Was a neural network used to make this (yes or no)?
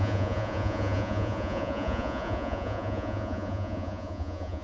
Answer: yes